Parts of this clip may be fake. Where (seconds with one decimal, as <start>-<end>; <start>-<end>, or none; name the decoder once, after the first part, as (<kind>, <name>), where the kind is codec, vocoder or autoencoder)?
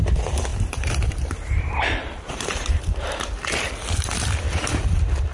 0.5-3.7 (vocoder, BigVGAN v2)